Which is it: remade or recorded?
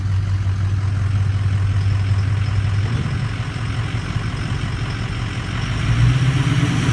recorded